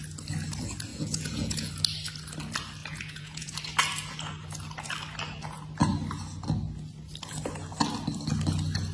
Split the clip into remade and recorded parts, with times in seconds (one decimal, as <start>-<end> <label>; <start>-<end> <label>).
0.0-0.9 recorded; 0.9-1.7 remade; 1.7-2.8 recorded; 2.8-3.5 remade; 3.5-8.9 recorded